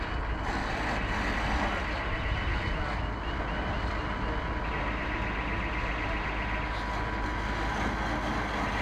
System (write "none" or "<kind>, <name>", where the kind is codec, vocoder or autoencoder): none